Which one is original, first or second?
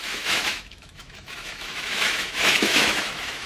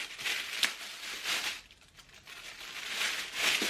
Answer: second